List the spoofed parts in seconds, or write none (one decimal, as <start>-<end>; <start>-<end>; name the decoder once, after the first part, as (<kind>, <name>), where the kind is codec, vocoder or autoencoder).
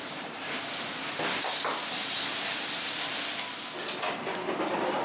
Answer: 0.0-0.6 (vocoder, BigVGAN v2)